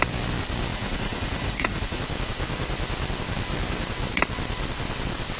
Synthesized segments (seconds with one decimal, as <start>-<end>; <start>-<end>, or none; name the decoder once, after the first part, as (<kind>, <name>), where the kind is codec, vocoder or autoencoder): 0.7-2.0 (vocoder, Vocos)